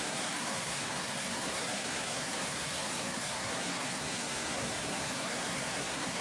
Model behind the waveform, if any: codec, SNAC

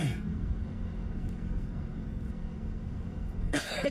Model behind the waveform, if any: codec, SNAC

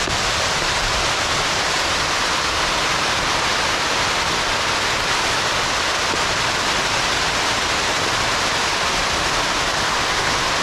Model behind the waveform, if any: none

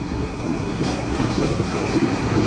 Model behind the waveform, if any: codec, SNAC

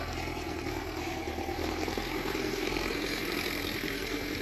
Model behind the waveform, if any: codec, SNAC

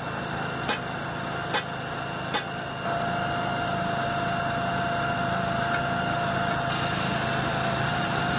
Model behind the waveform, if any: none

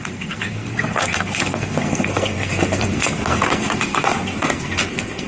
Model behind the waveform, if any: codec, SNAC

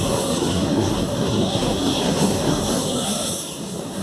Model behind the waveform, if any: codec, SNAC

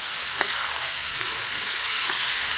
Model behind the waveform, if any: codec, SNAC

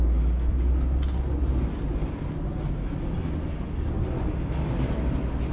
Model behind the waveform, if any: none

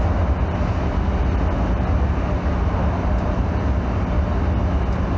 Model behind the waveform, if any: none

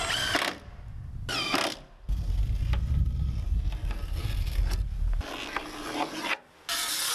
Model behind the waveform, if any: none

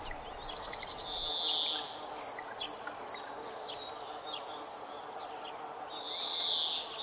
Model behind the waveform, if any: none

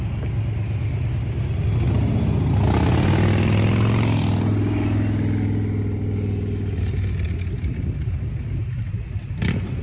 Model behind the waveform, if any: none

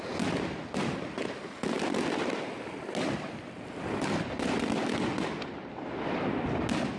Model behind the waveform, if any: none